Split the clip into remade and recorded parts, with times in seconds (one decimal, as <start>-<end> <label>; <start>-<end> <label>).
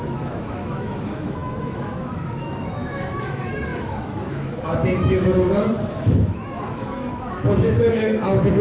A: 0.0-8.6 remade